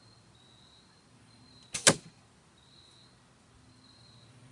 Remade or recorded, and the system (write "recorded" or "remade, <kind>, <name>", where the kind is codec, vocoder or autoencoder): recorded